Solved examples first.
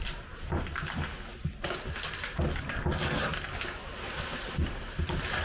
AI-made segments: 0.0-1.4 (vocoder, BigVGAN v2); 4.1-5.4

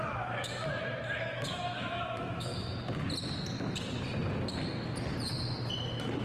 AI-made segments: 0.0-2.5 (autoencoder, DAC-VAE)

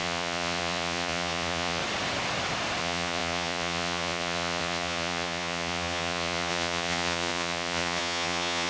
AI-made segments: 0.0-1.8 (vocoder, Vocos); 2.8-8.7